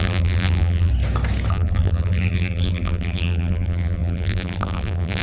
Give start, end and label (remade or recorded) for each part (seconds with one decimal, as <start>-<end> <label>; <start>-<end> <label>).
0.0-0.9 remade; 0.9-1.5 recorded; 1.5-5.2 remade